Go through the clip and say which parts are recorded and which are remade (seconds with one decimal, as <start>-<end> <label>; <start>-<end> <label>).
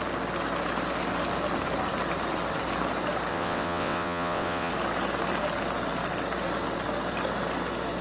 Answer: 0.0-3.3 recorded; 3.3-4.7 remade; 4.7-8.0 recorded